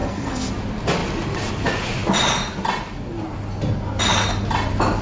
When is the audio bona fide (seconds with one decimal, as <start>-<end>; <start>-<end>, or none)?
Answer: 0.5-5.0